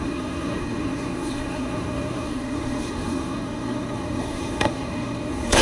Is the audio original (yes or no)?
no